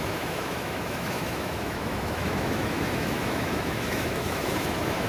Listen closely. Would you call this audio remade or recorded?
remade